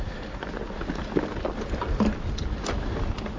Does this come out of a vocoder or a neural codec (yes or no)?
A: no